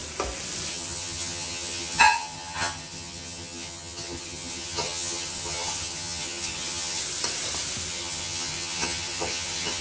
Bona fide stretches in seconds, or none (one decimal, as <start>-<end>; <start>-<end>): 0.0-0.7; 7.0-7.9